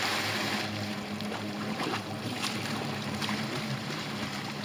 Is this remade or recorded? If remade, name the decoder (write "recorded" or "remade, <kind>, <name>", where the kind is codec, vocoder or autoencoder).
remade, vocoder, BigVGAN v2